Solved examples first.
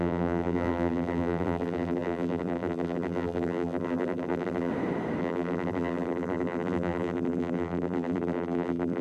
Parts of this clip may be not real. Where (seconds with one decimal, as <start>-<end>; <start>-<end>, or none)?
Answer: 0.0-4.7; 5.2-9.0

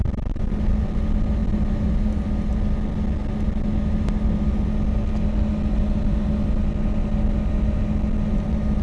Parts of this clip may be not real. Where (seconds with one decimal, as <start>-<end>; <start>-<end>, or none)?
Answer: none

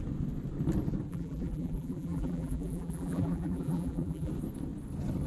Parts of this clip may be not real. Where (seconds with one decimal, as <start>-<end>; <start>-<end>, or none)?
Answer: 1.1-4.3

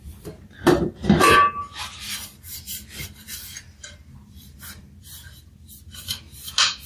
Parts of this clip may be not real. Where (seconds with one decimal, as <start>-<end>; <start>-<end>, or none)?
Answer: 1.0-4.8